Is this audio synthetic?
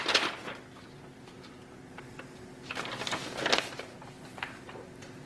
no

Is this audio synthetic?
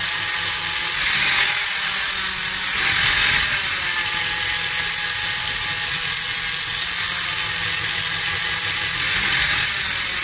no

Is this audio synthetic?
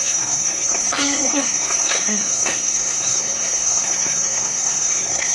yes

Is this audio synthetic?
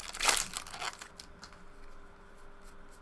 no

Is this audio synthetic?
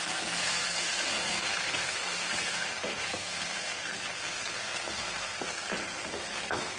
yes